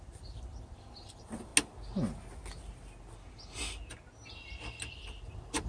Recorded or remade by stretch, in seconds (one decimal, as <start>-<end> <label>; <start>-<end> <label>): 0.0-1.5 remade; 1.5-4.9 recorded; 4.9-5.7 remade